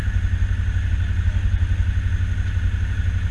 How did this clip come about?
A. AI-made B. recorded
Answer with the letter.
B